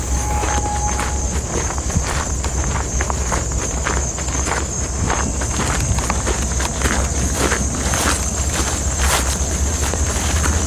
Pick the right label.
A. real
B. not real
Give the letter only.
A